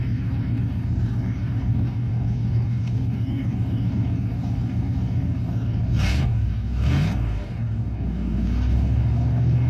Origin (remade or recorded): remade